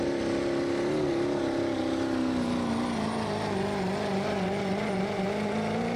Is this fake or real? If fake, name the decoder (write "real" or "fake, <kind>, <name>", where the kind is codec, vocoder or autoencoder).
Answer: real